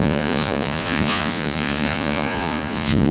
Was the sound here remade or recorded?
remade